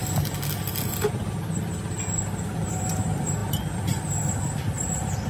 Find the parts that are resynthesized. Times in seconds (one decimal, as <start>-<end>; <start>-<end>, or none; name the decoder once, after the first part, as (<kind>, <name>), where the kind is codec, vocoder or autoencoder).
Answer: 2.6-5.3 (vocoder, BigVGAN v2)